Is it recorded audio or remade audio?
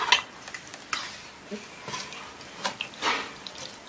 recorded